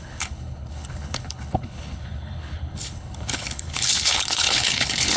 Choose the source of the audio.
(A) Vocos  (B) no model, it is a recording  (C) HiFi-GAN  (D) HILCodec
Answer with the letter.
D